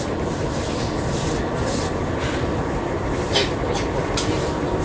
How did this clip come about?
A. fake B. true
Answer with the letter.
B